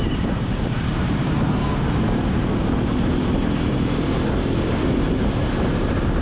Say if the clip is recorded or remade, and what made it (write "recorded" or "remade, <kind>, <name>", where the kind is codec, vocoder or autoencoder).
remade, vocoder, BigVGAN v2